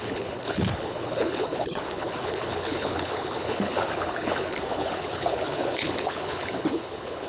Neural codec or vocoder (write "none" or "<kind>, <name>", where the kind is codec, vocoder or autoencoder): codec, HILCodec